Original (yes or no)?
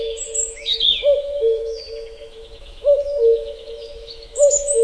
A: no